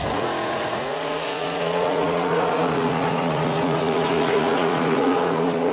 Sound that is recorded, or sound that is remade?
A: remade